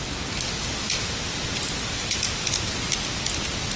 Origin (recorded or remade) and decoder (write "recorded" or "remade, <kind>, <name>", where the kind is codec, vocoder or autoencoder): recorded